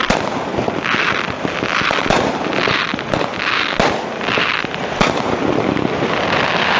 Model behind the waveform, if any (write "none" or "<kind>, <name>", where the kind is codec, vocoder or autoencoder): none